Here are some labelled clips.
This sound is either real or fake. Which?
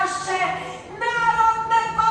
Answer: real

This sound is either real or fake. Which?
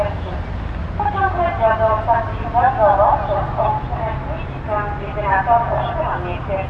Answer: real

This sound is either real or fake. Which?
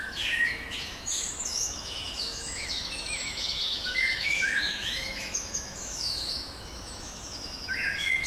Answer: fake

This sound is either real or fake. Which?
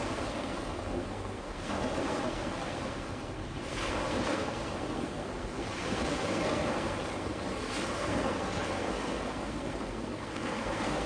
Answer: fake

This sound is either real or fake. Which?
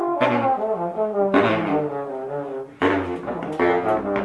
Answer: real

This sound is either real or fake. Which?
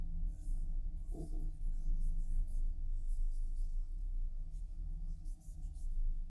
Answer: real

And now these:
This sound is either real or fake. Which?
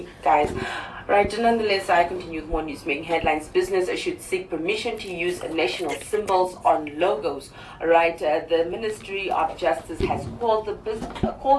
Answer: real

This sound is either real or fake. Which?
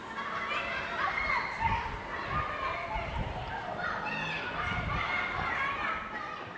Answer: real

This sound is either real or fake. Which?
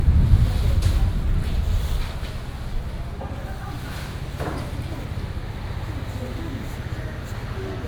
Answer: real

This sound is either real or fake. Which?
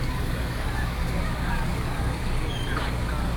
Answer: fake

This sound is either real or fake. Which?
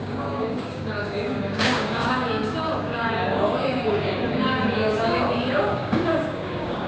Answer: fake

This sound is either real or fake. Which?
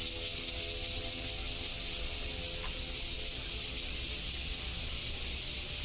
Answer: real